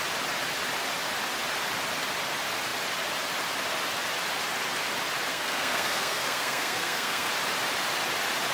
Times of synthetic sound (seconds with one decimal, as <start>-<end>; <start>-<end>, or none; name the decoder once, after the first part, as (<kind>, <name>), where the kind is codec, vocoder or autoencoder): 5.3-7.3 (codec, SNAC)